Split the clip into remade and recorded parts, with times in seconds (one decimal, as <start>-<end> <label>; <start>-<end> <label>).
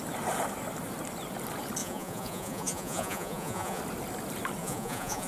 0.0-1.8 recorded; 1.8-3.8 remade; 3.8-4.6 recorded; 4.6-5.3 remade